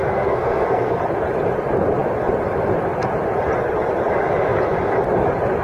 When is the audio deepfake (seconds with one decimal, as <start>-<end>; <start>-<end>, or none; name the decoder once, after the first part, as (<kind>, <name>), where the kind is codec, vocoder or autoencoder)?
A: 0.0-1.0 (codec, SNAC)

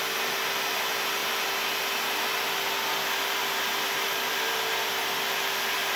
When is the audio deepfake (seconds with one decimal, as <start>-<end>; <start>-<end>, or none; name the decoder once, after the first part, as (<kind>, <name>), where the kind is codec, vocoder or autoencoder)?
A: none

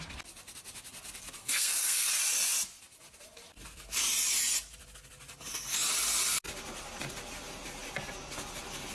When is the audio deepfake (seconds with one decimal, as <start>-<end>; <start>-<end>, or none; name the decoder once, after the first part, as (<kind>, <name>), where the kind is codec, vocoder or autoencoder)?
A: 1.4-2.1 (codec, SNAC)

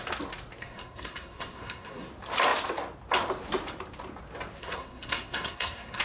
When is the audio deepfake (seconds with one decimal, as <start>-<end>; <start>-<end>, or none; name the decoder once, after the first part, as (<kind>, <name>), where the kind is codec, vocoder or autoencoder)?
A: 0.6-2.1 (codec, SNAC); 4.6-6.0